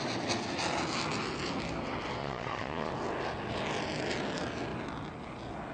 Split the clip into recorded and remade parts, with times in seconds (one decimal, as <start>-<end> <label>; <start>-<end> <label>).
0.0-2.2 recorded; 2.2-2.9 remade; 2.9-5.7 recorded